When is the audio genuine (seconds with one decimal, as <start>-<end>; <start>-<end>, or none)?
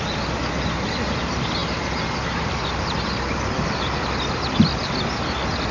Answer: 0.0-5.7